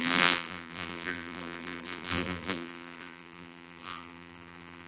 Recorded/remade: remade